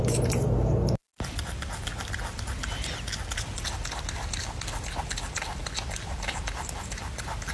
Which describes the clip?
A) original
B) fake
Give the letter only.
A